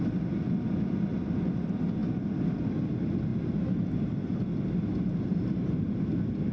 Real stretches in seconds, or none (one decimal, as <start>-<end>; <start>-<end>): 0.0-5.3; 6.0-6.5